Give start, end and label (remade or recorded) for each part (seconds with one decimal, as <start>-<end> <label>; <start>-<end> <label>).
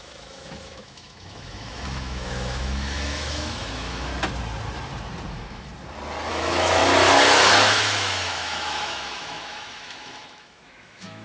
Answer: 0.0-4.1 remade; 4.1-5.3 recorded; 5.3-5.7 remade; 5.7-6.3 recorded; 6.3-6.8 remade; 6.8-7.7 recorded; 7.7-11.2 remade